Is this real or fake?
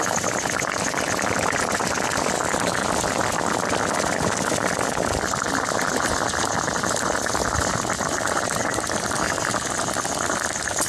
real